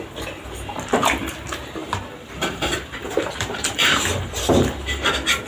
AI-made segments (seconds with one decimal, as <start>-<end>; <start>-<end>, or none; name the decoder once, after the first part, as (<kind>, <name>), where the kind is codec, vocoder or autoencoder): 1.8-5.1 (vocoder, BigVGAN v2)

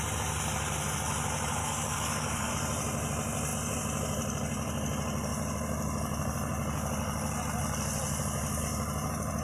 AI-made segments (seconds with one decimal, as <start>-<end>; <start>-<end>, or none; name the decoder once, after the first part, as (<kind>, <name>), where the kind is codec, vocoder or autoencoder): 1.6-2.5 (codec, DAC)